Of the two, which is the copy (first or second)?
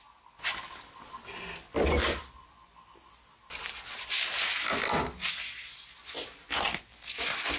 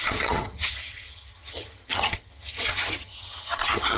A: second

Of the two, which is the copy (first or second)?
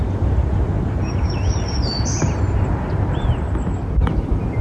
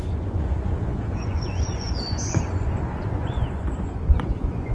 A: second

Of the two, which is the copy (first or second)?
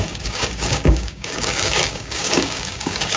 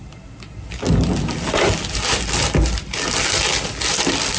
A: first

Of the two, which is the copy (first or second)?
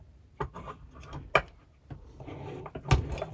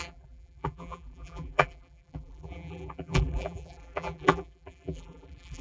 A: second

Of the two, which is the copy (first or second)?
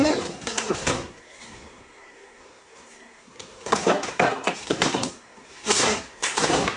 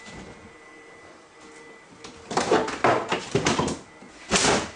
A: first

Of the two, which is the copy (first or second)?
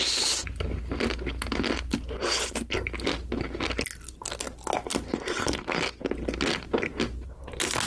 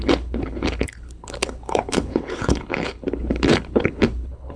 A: second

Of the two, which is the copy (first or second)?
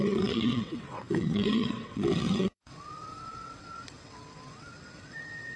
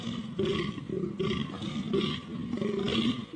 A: first